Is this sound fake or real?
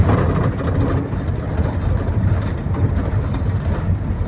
real